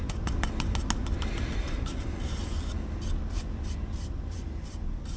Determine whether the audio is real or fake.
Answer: real